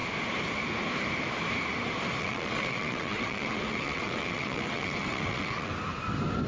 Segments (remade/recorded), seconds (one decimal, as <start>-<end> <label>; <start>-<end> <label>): 0.0-2.2 recorded; 2.2-5.7 remade; 5.7-6.5 recorded